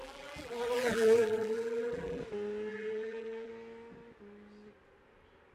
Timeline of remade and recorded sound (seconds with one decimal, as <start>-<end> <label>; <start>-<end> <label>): 0.0-2.2 remade; 2.2-2.7 recorded; 2.7-3.5 remade; 3.5-5.5 recorded